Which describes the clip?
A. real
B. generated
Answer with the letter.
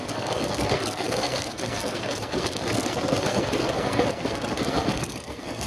B